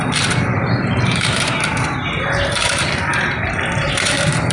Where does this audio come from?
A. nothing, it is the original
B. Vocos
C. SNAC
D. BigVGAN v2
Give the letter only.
D